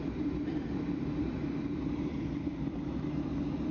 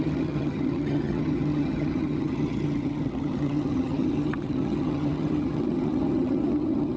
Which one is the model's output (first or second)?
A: second